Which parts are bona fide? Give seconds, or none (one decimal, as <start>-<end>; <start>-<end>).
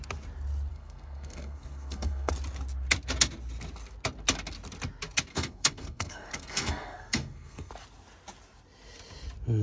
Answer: 0.0-0.7; 2.3-5.3; 7.7-9.6